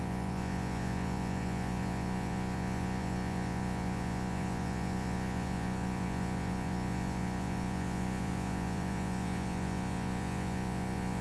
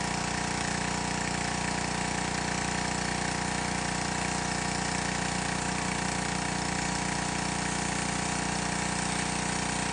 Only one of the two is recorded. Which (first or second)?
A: second